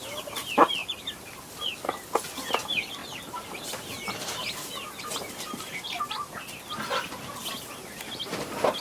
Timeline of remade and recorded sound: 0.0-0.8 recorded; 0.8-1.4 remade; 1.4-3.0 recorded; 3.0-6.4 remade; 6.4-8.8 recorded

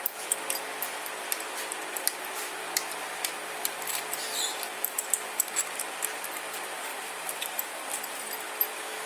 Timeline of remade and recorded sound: 0.0-1.9 recorded; 1.9-5.5 remade; 5.5-6.9 recorded; 6.9-7.9 remade; 7.9-9.1 recorded

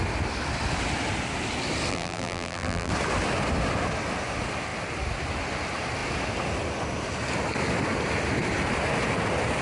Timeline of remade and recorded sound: 0.0-1.9 recorded; 1.9-2.9 remade; 2.9-9.6 recorded